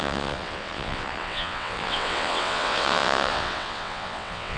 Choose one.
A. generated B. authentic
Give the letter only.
A